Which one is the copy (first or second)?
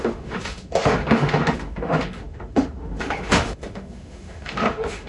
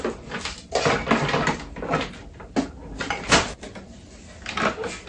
first